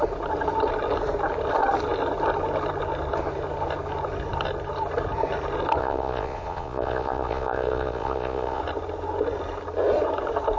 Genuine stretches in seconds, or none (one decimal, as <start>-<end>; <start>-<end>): 0.0-5.8; 8.6-10.6